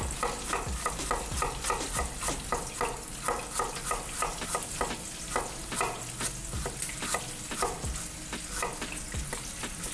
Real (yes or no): yes